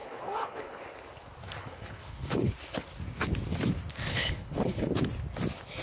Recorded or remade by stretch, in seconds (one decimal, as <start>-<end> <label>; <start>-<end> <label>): 0.0-0.8 remade; 0.8-1.6 recorded; 1.6-2.5 remade; 2.5-4.1 recorded; 4.1-4.9 remade; 4.9-5.8 recorded